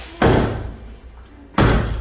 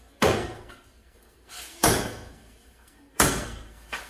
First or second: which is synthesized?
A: second